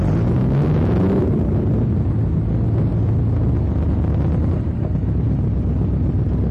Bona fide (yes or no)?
yes